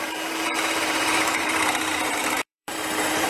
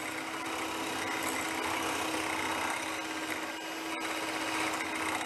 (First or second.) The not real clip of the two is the first